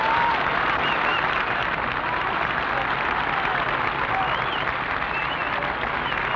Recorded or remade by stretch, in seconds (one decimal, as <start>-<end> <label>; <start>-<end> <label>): 0.0-1.1 recorded; 1.1-4.1 remade; 4.1-6.4 recorded